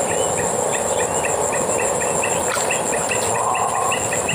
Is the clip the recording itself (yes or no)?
yes